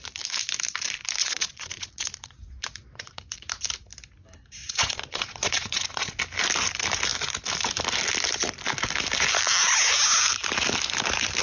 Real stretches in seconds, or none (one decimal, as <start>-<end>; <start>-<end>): 0.0-1.2; 3.5-4.6; 6.2-11.4